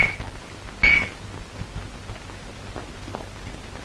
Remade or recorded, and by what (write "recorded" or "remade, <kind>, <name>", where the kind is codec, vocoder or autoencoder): recorded